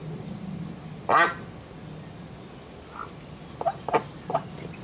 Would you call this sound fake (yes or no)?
no